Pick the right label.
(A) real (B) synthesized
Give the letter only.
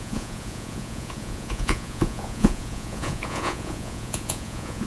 B